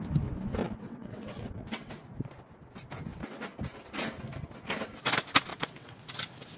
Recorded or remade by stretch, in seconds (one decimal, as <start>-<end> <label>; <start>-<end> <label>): 0.0-0.6 recorded; 0.6-1.9 remade; 1.9-5.5 recorded; 5.5-6.0 remade; 6.0-6.6 recorded